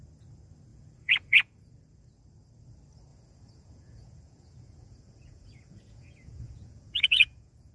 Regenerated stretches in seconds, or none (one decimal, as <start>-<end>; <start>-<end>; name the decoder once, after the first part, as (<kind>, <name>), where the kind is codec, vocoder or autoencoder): 0.7-2.1 (vocoder, Vocos); 3.1-7.7